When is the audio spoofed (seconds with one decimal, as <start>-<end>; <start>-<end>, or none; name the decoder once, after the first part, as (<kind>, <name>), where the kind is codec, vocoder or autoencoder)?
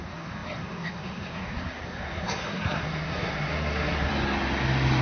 0.0-4.1 (codec, SNAC)